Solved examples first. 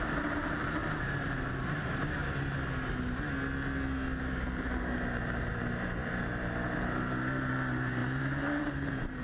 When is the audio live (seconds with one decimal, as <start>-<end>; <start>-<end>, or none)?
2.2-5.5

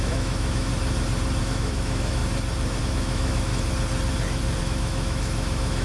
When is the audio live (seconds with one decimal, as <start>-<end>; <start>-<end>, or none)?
0.7-1.4; 2.2-2.8; 3.5-4.6

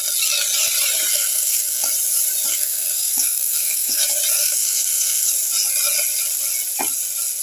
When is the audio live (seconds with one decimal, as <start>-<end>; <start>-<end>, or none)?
0.0-1.1; 1.9-2.5; 4.0-4.4; 5.3-7.4

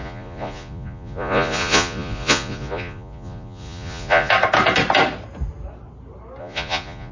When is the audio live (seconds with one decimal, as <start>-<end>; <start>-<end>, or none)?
4.3-6.4

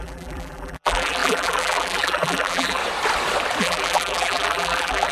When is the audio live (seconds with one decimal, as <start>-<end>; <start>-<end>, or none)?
2.8-3.6